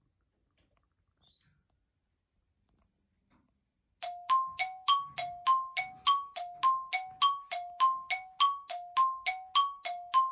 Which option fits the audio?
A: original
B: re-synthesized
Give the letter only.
A